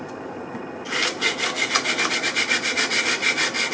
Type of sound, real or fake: real